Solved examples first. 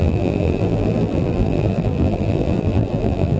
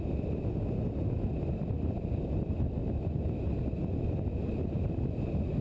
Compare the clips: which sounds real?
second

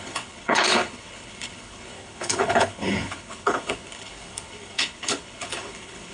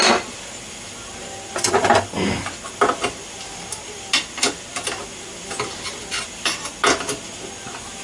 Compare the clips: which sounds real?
second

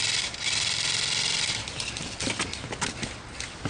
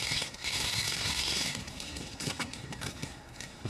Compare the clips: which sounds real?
first